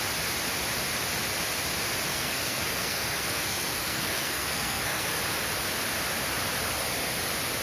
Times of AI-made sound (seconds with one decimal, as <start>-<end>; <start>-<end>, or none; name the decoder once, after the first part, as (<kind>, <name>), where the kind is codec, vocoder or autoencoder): 2.1-5.2 (codec, SNAC)